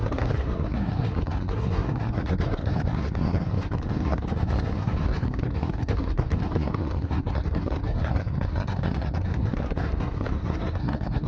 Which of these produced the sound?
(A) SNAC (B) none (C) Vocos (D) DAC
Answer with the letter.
A